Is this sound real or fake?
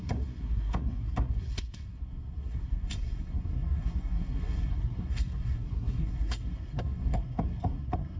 fake